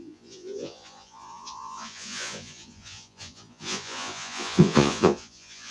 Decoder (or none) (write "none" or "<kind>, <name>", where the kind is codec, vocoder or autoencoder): vocoder, Vocos